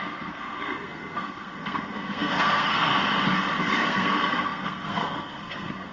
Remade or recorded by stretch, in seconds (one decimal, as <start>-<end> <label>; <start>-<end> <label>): 0.0-2.9 remade; 2.9-3.6 recorded; 3.6-5.9 remade